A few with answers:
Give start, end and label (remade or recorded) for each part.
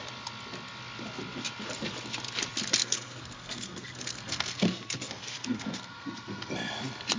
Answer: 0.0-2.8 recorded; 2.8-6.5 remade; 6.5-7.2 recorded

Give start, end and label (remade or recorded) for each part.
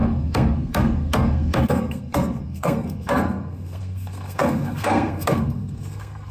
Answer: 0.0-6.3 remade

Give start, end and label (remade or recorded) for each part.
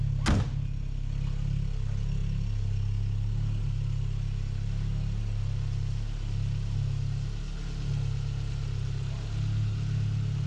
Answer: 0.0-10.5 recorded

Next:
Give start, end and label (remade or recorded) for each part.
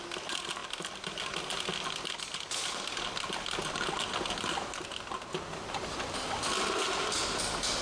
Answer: 0.0-7.8 recorded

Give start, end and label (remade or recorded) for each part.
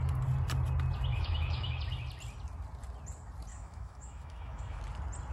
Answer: 0.0-1.1 recorded; 1.1-1.8 remade; 1.8-3.5 recorded; 3.5-4.8 remade; 4.8-5.3 recorded